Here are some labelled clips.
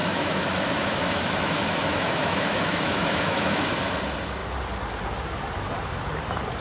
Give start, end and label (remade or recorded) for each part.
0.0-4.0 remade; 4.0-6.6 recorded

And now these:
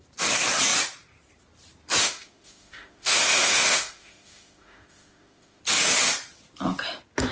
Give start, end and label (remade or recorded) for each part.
0.0-2.0 recorded; 2.0-5.6 remade; 5.6-7.3 recorded